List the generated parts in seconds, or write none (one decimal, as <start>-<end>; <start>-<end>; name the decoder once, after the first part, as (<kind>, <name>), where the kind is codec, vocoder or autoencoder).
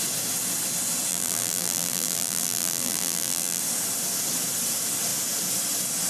1.1-3.6 (vocoder, BigVGAN v2)